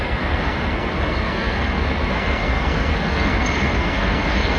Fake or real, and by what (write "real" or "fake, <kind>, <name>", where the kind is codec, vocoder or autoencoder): fake, codec, SNAC